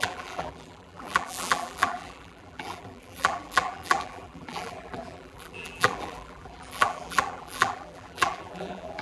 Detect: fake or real fake